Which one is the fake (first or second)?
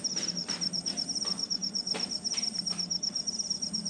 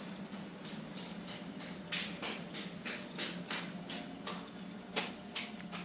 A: first